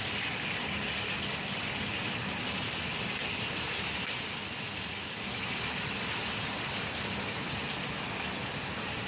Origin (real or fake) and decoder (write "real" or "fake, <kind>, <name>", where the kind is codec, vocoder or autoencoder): real